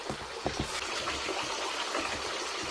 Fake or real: real